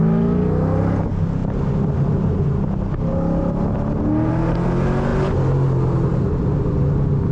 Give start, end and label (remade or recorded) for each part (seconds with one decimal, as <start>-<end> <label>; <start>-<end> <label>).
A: 0.0-7.3 recorded